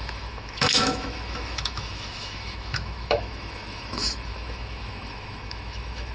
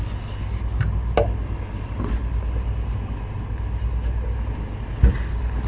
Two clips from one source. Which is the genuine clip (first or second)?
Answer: second